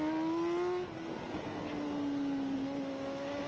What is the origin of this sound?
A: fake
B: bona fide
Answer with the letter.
B